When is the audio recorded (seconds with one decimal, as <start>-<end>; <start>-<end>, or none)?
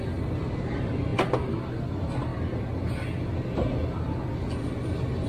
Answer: 0.0-5.3